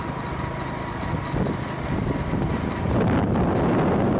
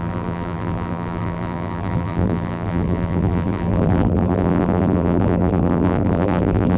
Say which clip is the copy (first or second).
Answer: second